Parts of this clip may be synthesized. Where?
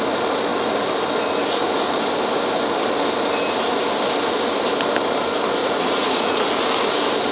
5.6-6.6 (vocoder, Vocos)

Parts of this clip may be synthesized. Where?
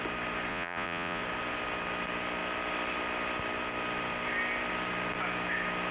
0.5-1.2 (vocoder, Vocos)